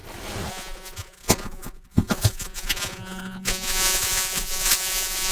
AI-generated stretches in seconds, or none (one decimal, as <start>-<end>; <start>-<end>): 0.5-5.3